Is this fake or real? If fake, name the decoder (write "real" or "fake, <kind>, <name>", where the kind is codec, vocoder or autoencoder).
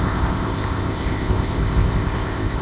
fake, codec, ZipCodec